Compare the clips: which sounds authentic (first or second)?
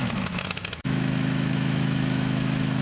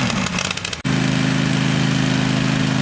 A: second